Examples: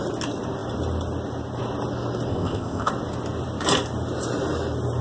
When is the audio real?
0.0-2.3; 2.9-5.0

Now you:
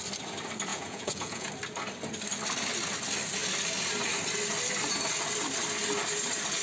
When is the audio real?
0.0-0.7; 1.5-6.6

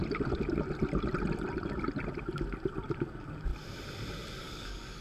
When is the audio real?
0.0-3.0; 3.5-4.4

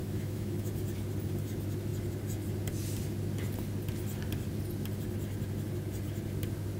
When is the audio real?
0.7-6.8